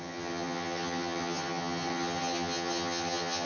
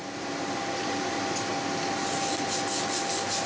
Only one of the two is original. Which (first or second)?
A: second